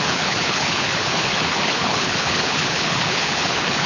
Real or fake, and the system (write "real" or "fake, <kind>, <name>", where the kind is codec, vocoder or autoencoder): fake, codec, HILCodec